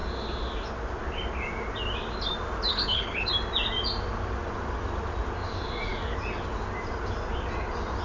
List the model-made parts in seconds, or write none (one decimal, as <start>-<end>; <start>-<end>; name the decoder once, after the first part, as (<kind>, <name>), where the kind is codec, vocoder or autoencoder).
2.7-3.3 (codec, HILCodec)